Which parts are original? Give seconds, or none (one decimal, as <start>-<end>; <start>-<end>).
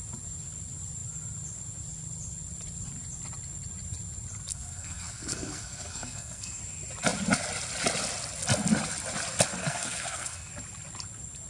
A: 0.0-4.5; 6.6-9.6; 10.5-11.5